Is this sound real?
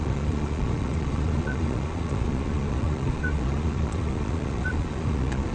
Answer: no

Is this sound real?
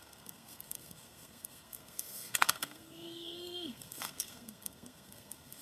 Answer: no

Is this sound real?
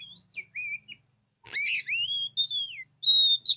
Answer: yes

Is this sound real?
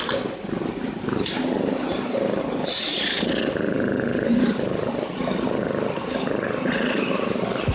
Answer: yes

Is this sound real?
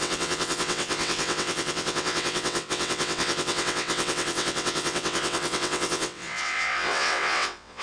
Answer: no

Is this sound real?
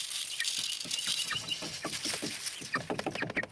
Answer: yes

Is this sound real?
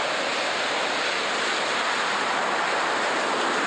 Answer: yes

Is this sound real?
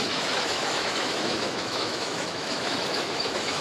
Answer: no